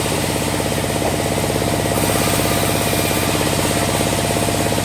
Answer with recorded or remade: recorded